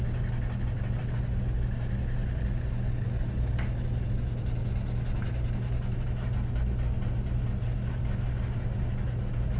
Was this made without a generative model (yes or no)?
yes